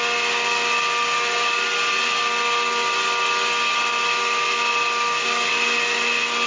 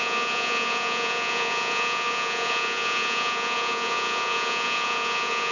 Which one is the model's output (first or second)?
second